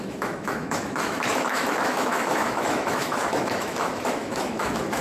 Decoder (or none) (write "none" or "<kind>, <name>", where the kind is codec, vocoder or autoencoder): autoencoder, DAC-VAE